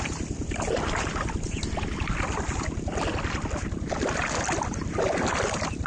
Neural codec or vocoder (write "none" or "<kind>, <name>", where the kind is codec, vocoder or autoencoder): none